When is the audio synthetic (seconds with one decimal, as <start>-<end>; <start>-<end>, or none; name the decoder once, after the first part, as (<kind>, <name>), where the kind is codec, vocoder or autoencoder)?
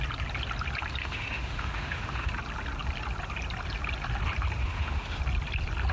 1.0-2.3 (autoencoder, DAC-VAE); 4.6-5.2